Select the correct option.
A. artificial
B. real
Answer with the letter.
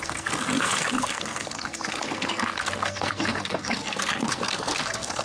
A